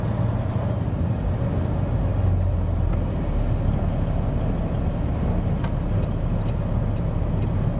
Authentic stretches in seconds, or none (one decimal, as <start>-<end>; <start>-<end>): 0.0-7.8